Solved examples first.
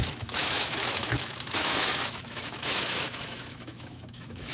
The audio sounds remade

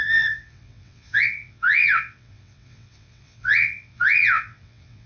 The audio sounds remade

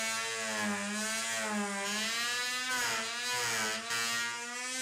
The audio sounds recorded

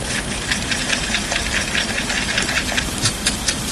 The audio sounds recorded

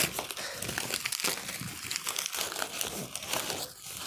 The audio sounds recorded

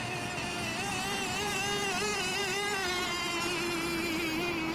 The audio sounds recorded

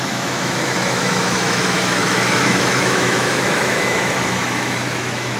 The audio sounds remade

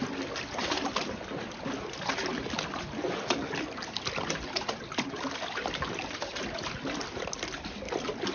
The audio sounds recorded